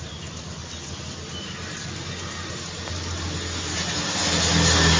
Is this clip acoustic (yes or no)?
yes